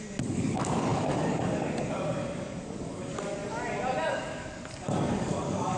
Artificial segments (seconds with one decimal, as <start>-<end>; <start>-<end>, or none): 0.0-3.4; 4.1-5.8